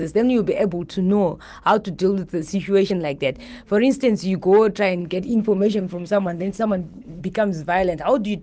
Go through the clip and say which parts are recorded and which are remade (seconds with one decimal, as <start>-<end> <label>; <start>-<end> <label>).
0.0-5.0 recorded; 5.0-7.2 remade; 7.2-8.4 recorded